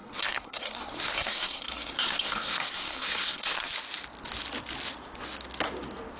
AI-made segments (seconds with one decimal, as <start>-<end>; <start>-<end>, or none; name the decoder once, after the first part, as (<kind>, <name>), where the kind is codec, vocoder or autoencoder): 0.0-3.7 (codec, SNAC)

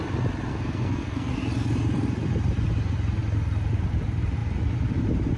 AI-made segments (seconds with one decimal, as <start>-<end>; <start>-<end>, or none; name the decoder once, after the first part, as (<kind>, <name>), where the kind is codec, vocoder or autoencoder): 0.5-1.3 (codec, SNAC)

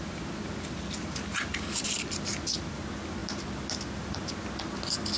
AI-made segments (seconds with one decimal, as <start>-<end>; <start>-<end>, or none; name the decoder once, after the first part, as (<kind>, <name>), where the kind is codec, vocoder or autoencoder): none

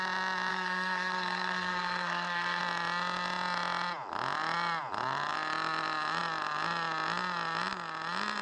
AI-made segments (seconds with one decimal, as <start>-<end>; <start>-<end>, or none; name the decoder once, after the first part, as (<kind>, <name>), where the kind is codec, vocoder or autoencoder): 0.5-2.6 (codec, SNAC)

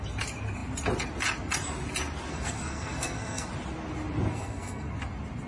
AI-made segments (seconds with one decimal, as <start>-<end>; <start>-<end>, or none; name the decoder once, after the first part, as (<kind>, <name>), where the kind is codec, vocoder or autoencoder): 2.3-3.5 (codec, SNAC); 4.3-4.9

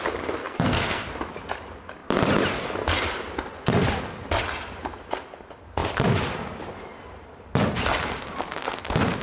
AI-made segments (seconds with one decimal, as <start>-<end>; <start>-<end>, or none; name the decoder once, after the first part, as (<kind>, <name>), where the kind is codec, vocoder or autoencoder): 0.4-1.0 (codec, SNAC)